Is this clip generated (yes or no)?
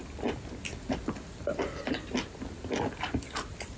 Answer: no